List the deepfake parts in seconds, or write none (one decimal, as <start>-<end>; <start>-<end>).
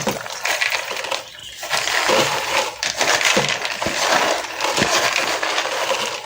none